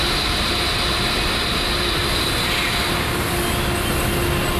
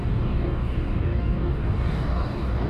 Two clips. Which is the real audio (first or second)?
first